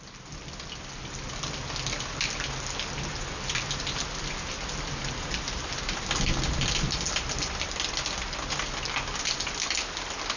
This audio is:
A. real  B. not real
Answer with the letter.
A